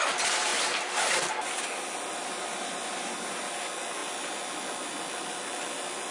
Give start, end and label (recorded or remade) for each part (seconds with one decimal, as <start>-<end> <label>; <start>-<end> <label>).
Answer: 0.0-6.1 recorded